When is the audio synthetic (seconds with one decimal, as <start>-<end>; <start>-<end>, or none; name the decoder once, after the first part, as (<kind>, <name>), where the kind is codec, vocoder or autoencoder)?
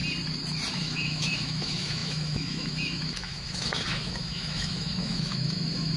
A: 0.7-6.0 (autoencoder, DAC-VAE)